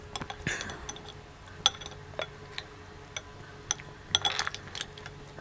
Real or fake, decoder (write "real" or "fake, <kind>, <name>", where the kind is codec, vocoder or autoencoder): real